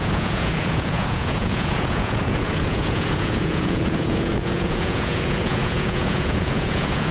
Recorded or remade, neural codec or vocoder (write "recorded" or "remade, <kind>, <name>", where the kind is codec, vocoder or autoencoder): remade, vocoder, Vocos